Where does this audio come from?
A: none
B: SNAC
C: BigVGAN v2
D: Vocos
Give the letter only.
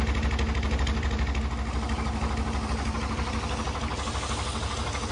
A